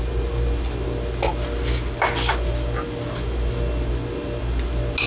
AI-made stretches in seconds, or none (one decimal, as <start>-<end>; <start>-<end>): none